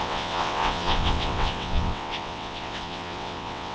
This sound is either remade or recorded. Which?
remade